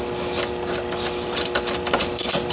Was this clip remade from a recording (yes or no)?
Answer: no